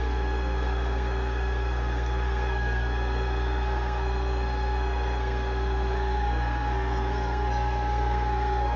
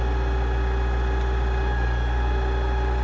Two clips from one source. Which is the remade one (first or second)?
first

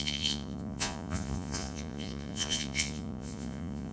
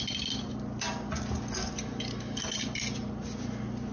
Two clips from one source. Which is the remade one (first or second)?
first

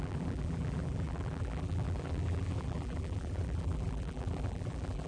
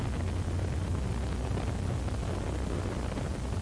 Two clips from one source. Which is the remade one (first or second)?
first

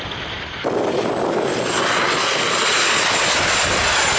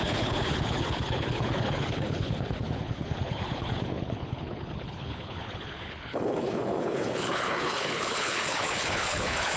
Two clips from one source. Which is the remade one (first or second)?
second